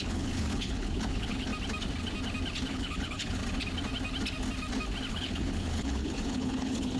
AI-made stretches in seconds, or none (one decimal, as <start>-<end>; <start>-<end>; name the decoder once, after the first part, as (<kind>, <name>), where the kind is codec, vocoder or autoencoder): 0.0-1.5 (codec, HILCodec); 2.7-3.4; 5.1-7.0